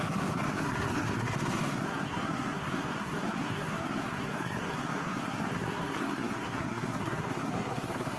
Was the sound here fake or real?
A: fake